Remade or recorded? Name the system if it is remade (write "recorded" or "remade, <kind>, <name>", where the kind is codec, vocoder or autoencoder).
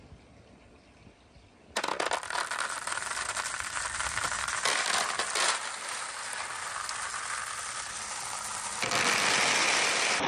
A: recorded